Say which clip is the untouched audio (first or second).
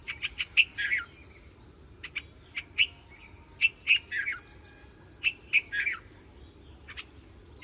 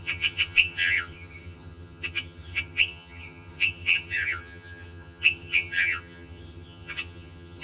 first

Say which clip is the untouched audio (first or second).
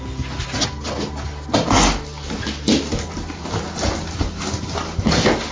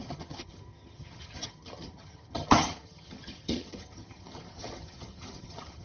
first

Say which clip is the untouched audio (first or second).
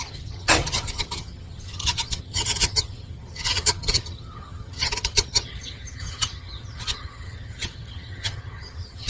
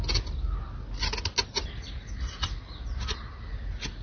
second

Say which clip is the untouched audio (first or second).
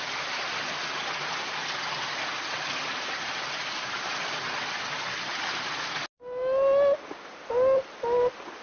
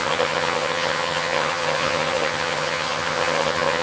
first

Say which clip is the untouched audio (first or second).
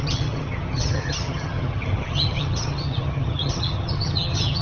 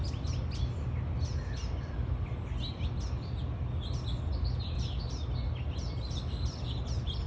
second